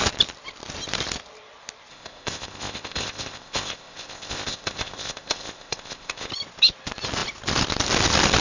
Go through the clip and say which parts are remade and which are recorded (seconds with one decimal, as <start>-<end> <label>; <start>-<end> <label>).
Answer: 0.0-1.9 recorded; 1.9-6.3 remade; 6.3-8.4 recorded